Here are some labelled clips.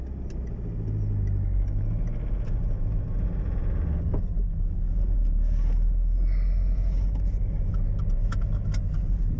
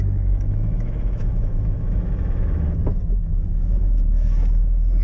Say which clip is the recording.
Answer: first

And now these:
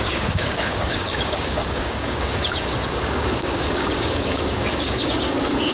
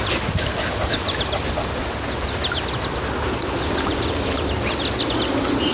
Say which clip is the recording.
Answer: second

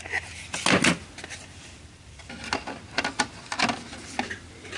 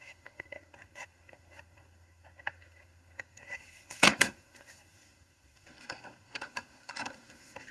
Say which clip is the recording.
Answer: first